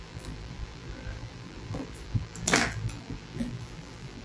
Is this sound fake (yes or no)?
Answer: yes